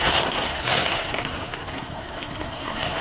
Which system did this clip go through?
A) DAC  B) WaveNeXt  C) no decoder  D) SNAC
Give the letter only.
D